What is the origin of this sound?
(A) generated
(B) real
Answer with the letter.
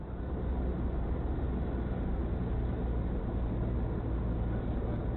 B